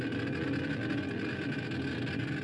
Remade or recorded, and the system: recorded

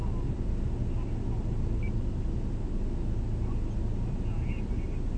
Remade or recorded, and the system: recorded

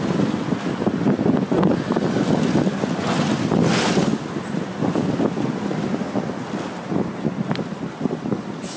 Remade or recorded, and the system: recorded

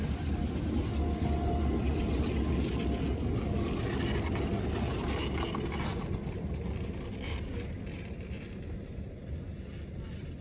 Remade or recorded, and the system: recorded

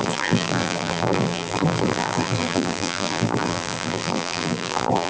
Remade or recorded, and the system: remade, vocoder, BigVGAN v2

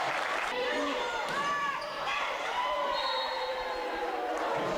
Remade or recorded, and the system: remade, vocoder, BigVGAN v2